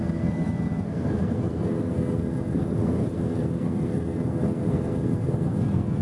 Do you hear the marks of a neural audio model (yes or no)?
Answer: yes